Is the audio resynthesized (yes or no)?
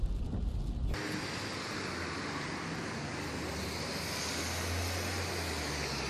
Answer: no